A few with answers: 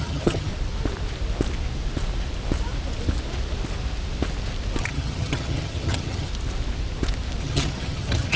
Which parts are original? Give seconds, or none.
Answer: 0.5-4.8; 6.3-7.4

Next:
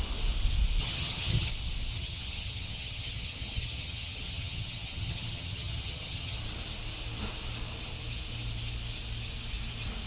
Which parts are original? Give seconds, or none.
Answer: 0.0-0.8; 1.5-1.9; 6.4-10.1

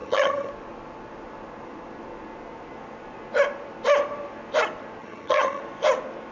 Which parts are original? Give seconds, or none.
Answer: 0.5-5.0; 5.6-6.3

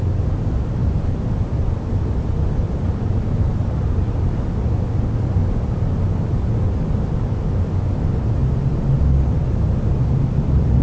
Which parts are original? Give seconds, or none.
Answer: 0.0-10.8